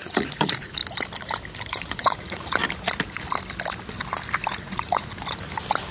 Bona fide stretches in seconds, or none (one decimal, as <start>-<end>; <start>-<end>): 0.8-1.7; 2.6-4.6; 5.1-5.9